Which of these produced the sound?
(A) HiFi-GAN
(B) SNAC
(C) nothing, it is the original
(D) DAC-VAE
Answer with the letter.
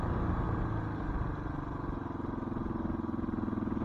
C